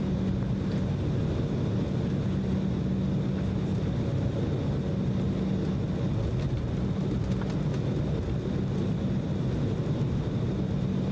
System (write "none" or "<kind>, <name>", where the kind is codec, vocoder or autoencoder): none